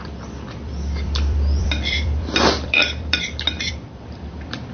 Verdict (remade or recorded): remade